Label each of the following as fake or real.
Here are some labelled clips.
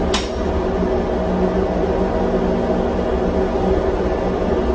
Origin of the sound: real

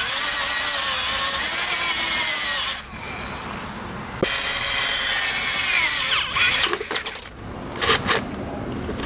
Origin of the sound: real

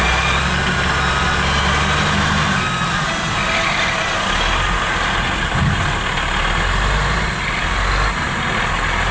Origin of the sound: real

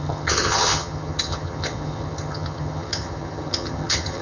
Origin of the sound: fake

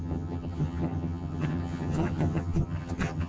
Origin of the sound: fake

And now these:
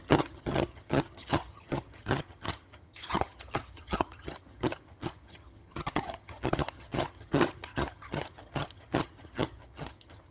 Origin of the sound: fake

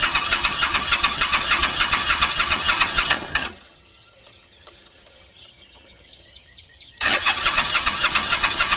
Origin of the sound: fake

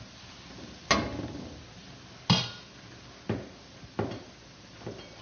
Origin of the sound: real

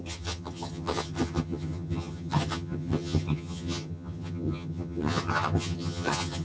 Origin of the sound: fake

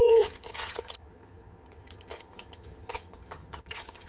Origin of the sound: fake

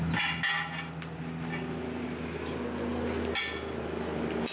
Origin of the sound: real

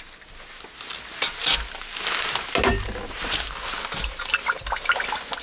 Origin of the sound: real